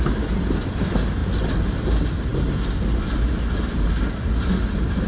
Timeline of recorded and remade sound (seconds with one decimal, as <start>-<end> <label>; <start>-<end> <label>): 0.0-5.1 recorded